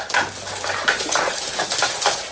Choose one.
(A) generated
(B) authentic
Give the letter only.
B